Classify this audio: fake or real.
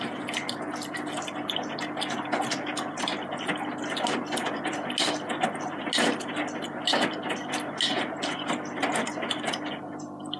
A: real